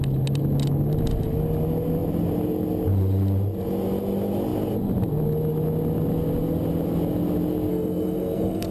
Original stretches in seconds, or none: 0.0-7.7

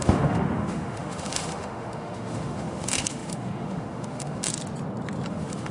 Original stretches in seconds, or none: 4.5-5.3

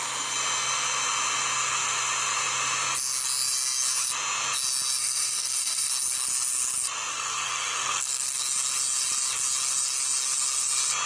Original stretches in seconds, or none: 0.0-5.0; 5.9-7.1; 8.4-11.1